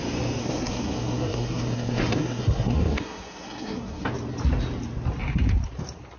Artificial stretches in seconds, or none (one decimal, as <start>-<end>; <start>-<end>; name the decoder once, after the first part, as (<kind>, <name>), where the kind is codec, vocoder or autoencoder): 0.4-4.1 (codec, SNAC)